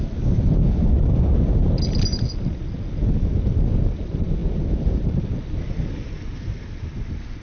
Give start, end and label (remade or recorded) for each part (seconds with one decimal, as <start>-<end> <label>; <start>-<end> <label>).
0.0-7.4 recorded